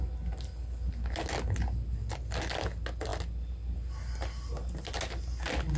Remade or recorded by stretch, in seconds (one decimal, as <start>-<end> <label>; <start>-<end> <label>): 0.0-5.8 recorded